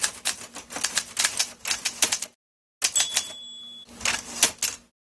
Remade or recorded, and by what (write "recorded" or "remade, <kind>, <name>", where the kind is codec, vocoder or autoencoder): recorded